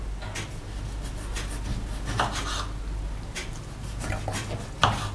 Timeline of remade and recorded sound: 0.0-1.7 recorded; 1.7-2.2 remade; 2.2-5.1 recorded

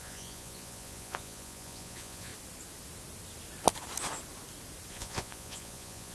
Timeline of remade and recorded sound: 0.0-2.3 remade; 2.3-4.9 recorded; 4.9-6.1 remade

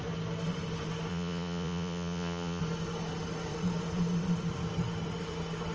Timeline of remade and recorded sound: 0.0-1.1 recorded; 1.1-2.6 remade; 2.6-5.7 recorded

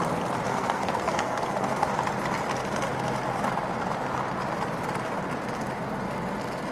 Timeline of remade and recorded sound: 0.0-0.5 recorded; 0.5-1.9 remade; 1.9-6.7 recorded

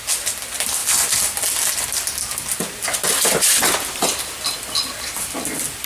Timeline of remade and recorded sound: 0.0-5.9 recorded

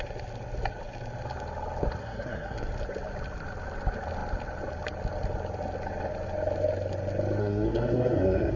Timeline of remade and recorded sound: 0.0-2.0 recorded; 2.0-2.7 remade; 2.7-7.4 recorded; 7.4-8.6 remade